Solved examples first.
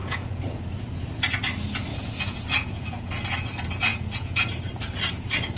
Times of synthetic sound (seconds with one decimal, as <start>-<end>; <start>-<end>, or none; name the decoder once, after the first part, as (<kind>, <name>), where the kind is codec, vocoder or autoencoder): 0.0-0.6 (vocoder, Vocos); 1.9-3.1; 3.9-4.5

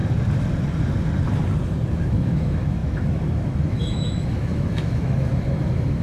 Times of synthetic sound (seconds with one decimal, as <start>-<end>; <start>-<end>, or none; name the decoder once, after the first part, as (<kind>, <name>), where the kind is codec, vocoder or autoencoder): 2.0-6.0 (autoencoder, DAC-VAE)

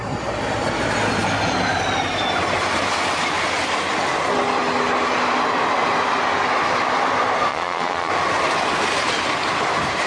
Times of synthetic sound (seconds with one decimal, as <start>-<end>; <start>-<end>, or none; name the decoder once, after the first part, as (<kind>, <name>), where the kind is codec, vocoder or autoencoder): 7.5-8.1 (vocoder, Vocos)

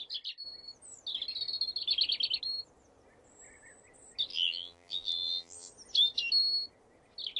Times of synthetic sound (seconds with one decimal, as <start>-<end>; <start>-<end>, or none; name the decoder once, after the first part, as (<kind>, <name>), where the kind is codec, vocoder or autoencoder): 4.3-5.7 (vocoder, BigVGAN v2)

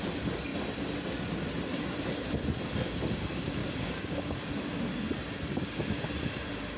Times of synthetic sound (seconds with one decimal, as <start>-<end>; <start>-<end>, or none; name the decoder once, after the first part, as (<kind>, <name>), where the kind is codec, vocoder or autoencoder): 3.6-4.5 (codec, DAC); 5.5-6.1

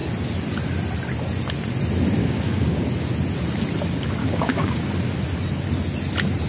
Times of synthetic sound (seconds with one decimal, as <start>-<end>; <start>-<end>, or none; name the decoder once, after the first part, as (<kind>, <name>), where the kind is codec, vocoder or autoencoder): 2.2-2.8 (codec, DAC); 4.2-4.8